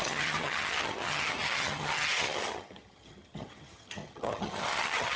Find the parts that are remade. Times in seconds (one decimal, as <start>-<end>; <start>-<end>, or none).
0.0-5.2